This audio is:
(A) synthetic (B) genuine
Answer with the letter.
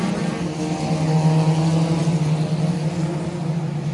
B